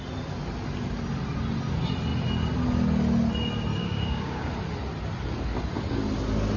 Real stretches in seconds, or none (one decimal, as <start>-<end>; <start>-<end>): 0.0-3.8; 4.5-6.6